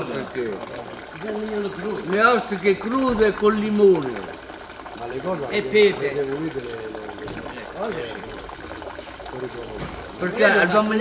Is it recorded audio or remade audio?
recorded